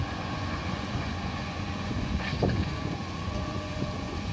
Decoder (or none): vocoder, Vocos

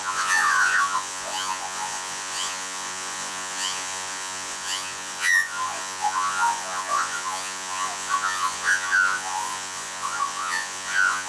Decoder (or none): vocoder, Vocos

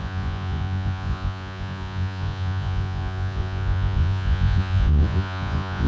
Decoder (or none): vocoder, Vocos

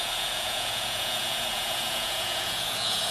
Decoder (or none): vocoder, Vocos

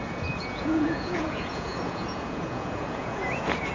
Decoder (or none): vocoder, Vocos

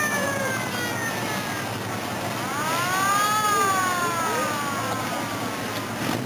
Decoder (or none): none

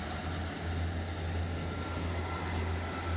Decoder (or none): none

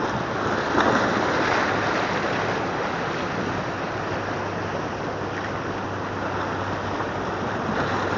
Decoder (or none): none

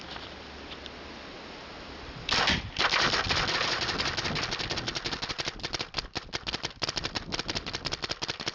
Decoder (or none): none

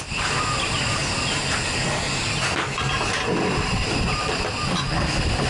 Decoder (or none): none